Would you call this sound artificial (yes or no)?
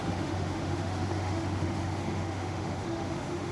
yes